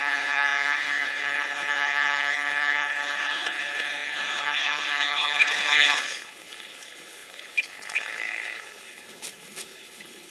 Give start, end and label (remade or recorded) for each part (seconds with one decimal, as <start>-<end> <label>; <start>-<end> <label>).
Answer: 0.0-10.3 remade